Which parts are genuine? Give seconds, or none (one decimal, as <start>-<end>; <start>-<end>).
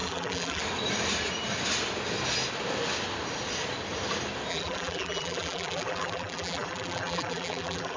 0.6-4.5